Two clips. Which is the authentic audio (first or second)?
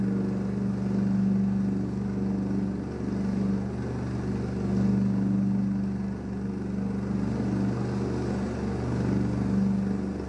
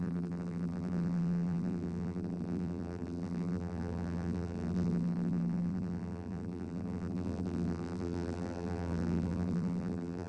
first